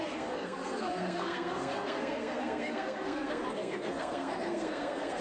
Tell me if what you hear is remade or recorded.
remade